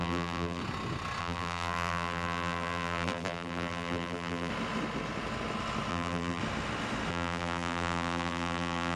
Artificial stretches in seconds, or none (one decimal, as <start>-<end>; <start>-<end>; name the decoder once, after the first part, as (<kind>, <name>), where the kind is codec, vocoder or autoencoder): 0.0-0.6 (vocoder, BigVGAN v2); 1.2-4.5; 5.9-6.4; 7.1-9.0